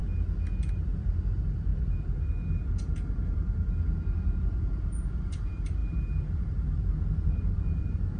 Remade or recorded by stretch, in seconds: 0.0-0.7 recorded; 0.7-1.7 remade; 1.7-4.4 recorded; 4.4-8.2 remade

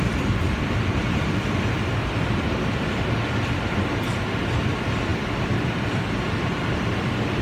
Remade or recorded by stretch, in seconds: 0.0-7.4 remade